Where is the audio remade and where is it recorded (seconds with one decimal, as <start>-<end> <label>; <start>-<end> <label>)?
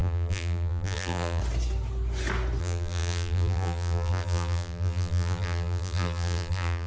0.0-1.4 remade; 1.4-2.6 recorded; 2.6-6.9 remade